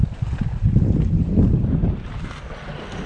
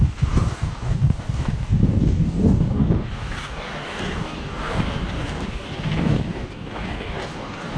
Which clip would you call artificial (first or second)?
second